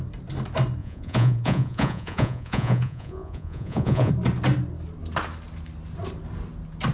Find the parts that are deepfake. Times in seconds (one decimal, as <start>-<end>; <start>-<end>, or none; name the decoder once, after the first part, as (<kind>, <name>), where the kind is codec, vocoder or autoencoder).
0.8-4.1 (vocoder, Vocos)